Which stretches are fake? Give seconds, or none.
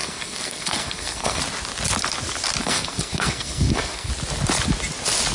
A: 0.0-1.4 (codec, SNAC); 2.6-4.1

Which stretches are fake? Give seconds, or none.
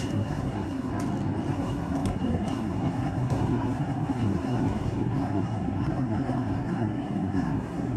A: 0.0-0.9 (codec, SNAC); 1.5-8.0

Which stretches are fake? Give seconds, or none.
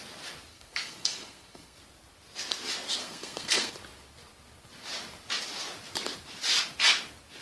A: 0.5-1.8 (codec, SNAC); 3.0-3.7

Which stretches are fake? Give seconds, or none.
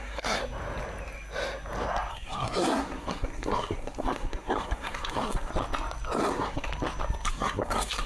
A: 0.0-0.4 (codec, SNAC); 2.1-5.5; 6.2-6.7; 7.3-8.1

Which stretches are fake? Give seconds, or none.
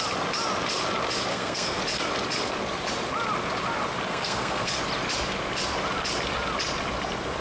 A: 1.3-1.8 (codec, SNAC); 4.1-4.8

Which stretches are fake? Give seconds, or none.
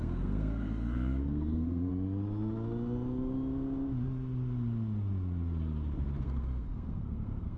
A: 0.0-1.9 (codec, SNAC); 6.2-7.6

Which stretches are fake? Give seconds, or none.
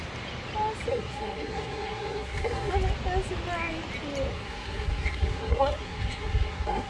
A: 0.9-2.7 (codec, SNAC); 4.3-6.9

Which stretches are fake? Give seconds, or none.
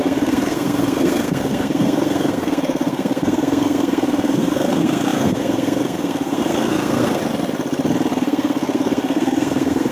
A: 0.0-7.2 (codec, SNAC); 8.1-9.9